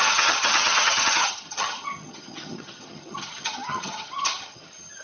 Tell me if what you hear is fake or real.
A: fake